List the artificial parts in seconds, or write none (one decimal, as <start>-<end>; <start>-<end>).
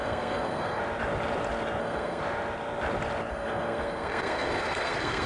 0.0-0.8; 1.8-2.2; 3.3-5.3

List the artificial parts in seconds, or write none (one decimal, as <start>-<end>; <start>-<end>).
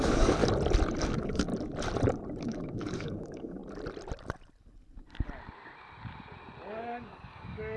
0.0-0.4; 1.0-1.5; 2.4-3.6; 6.7-7.8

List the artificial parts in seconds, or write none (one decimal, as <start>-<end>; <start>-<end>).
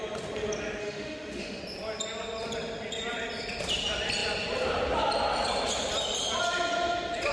0.8-1.6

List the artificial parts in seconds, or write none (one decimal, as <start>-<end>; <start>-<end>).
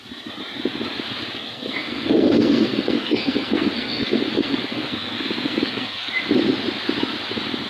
1.5-6.1